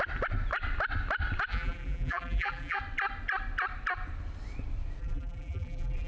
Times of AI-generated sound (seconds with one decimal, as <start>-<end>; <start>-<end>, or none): 1.5-2.8; 5.0-6.1